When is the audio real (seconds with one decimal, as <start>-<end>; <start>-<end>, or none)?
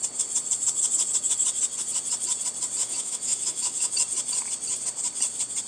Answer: 0.0-2.8; 3.9-5.7